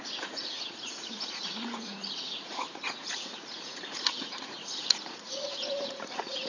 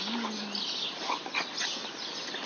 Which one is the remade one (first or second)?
first